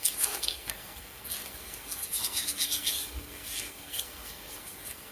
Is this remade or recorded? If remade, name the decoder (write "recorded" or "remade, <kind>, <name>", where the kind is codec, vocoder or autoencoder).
remade, codec, SNAC